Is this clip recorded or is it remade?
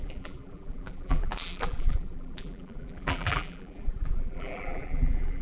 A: remade